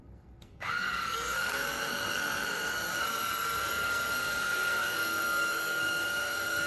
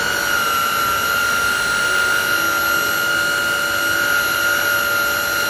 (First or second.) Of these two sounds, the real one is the second